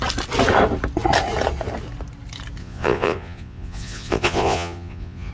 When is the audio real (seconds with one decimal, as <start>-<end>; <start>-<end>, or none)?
0.0-2.6